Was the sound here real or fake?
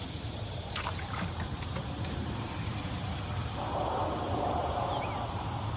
fake